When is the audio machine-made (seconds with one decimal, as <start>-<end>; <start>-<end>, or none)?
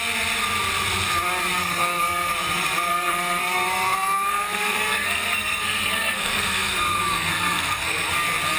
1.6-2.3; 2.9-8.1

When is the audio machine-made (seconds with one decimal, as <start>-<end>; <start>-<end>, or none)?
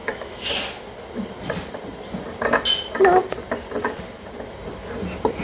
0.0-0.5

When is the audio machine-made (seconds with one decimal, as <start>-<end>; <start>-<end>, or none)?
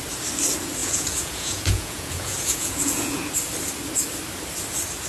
0.8-3.2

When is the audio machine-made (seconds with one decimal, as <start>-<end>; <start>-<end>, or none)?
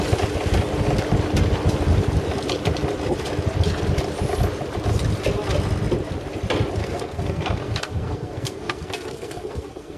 6.8-10.0